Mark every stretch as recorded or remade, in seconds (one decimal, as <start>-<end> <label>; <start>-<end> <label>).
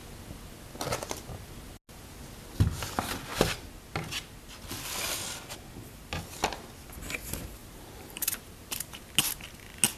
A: 0.0-7.6 recorded; 7.6-9.1 remade; 9.1-10.0 recorded